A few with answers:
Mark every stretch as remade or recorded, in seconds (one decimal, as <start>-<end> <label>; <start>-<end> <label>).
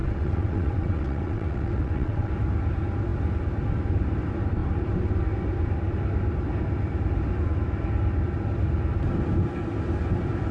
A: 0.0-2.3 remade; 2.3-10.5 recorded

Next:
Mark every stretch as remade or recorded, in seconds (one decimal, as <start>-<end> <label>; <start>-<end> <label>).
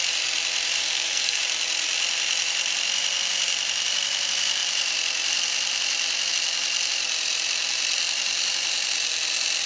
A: 0.0-0.8 recorded; 0.8-1.4 remade; 1.4-9.7 recorded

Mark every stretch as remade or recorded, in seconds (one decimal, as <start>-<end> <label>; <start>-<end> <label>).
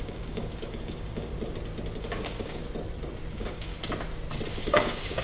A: 0.0-1.3 remade; 1.3-2.0 recorded; 2.0-2.6 remade; 2.6-3.3 recorded; 3.3-3.7 remade; 3.7-4.5 recorded; 4.5-5.2 remade